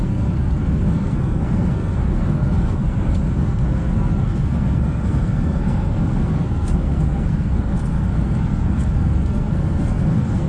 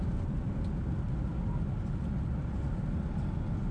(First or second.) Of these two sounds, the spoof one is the first